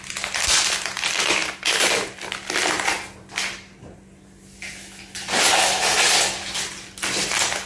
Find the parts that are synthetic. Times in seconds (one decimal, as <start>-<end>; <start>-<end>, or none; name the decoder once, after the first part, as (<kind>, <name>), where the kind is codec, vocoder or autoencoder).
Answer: none